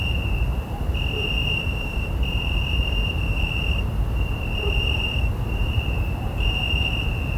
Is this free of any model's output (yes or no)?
no